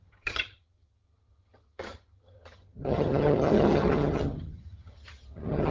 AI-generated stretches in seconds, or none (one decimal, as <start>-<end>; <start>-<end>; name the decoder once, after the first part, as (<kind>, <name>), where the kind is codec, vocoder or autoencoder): 0.0-5.7 (vocoder, HiFi-GAN)